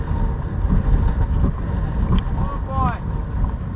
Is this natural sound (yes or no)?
yes